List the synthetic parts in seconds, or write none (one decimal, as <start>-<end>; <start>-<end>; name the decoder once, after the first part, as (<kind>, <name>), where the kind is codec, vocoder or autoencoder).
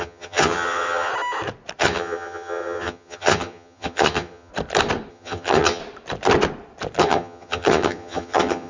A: 0.0-1.1 (vocoder, HiFi-GAN); 1.8-4.5; 5.1-5.8; 7.0-8.7